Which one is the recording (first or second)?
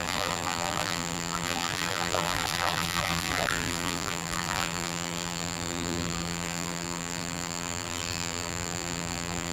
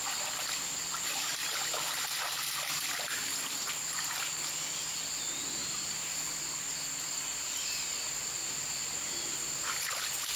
second